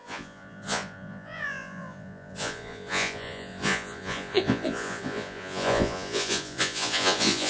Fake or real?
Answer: fake